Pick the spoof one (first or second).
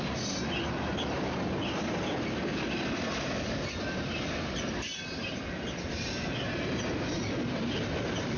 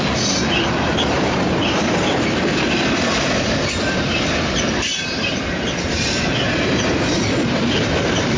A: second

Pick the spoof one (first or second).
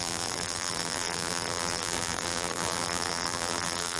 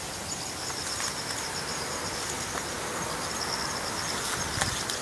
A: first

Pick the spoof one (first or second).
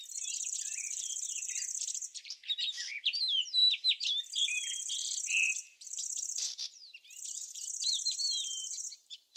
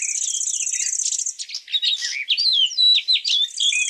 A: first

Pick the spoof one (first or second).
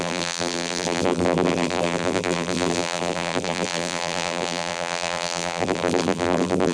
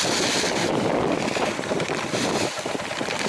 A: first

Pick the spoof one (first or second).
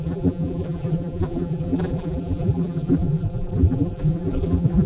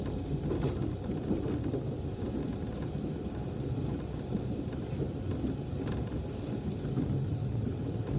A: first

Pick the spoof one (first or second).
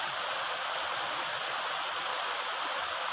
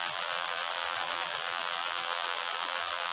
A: second